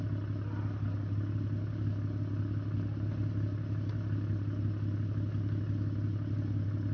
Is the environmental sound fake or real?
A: real